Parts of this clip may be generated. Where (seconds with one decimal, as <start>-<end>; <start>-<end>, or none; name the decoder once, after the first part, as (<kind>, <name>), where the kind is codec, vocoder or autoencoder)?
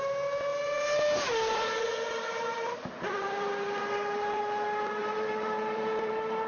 0.5-4.4 (vocoder, BigVGAN v2); 5.0-6.1